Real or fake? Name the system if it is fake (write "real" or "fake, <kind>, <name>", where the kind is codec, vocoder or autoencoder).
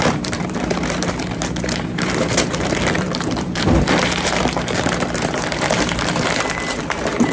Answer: fake, vocoder, BigVGAN v2